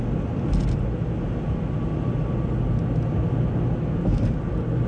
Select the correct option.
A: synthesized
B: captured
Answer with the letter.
B